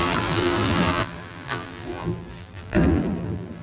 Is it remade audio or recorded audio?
remade